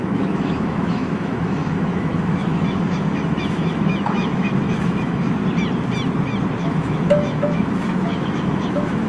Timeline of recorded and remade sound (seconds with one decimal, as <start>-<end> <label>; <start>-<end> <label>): 0.0-5.4 remade; 5.4-6.6 recorded; 6.6-9.1 remade